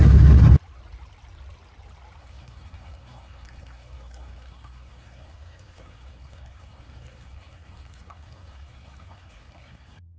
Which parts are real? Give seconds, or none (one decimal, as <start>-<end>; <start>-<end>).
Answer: 0.5-2.2